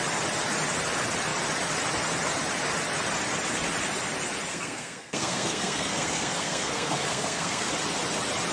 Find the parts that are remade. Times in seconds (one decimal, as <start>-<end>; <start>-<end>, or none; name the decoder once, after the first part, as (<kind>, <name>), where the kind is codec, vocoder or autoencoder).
4.5-7.7 (codec, SNAC)